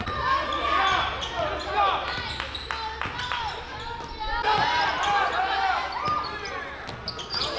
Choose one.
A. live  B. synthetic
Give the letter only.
A